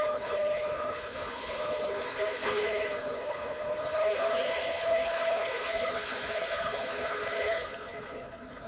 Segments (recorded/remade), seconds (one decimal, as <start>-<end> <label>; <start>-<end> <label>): 0.0-8.7 remade